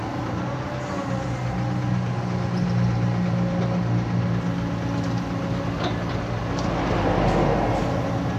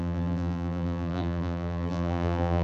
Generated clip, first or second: second